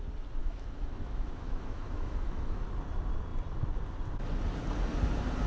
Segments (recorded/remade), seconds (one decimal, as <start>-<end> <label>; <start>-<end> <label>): 0.0-0.4 recorded; 0.4-2.6 remade; 2.6-5.5 recorded